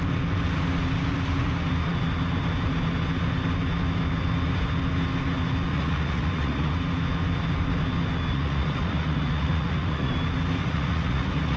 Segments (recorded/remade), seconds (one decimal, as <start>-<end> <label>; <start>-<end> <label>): 0.0-5.7 recorded; 5.7-6.7 remade; 6.7-8.3 recorded; 8.3-10.1 remade; 10.1-10.6 recorded; 10.6-11.6 remade